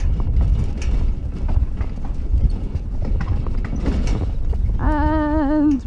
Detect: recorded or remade recorded